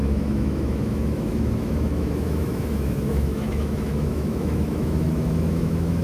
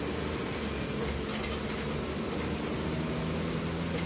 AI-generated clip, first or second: first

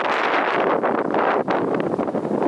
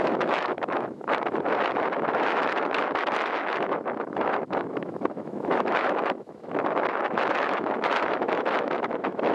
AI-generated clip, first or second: second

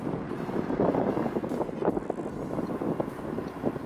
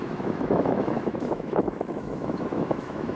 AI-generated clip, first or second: second